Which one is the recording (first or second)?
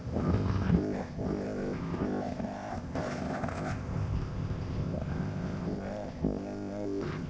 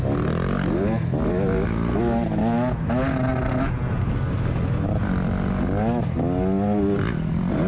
second